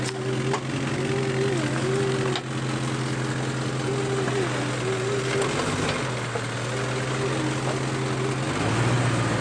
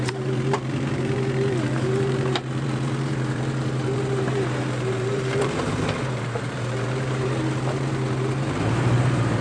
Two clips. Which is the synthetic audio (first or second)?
second